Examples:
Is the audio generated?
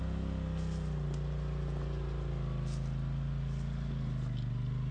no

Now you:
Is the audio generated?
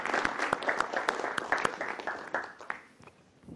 no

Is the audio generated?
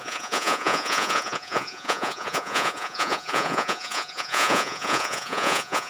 yes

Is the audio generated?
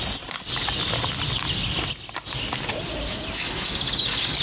no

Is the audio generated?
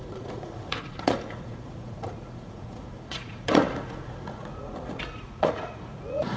yes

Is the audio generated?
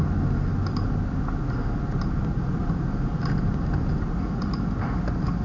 no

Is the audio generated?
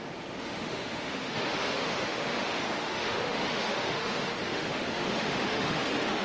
yes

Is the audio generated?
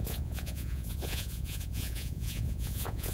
yes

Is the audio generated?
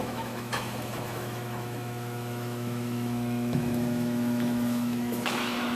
yes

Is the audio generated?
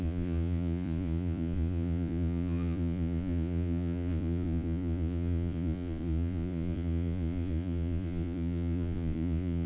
yes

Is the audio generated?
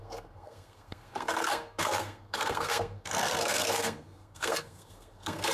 yes